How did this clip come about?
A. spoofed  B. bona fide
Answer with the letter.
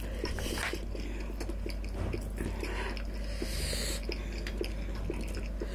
B